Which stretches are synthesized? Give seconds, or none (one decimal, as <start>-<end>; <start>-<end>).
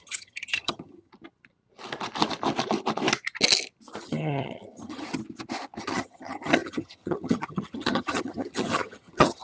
0.0-1.1; 4.0-5.2; 5.8-9.4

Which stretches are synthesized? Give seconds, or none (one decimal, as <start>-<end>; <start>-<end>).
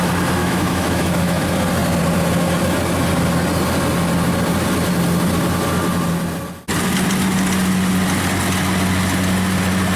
0.4-1.4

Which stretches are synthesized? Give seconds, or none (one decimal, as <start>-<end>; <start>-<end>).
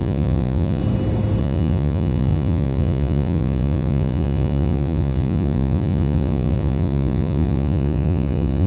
0.0-0.8; 1.4-8.7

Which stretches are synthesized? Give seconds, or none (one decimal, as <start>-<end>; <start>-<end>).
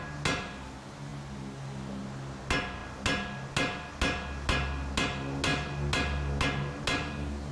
none